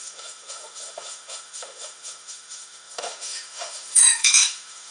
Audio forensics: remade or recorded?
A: remade